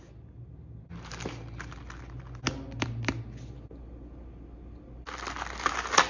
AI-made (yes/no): no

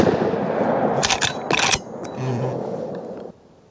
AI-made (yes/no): no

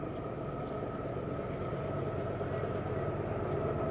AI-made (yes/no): no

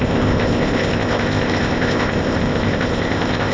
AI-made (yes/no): yes